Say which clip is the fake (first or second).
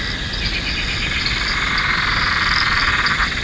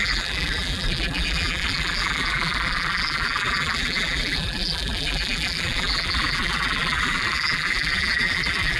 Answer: second